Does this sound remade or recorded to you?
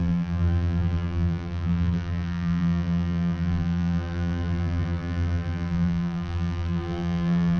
remade